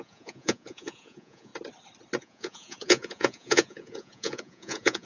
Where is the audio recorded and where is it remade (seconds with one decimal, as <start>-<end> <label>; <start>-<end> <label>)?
0.0-1.5 remade; 1.5-2.2 recorded; 2.2-5.1 remade